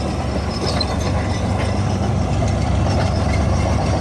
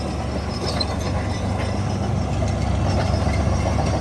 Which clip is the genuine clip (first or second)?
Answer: second